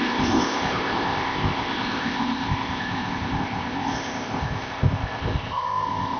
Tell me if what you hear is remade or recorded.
remade